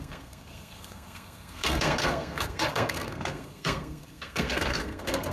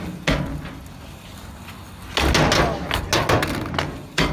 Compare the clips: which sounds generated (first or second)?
first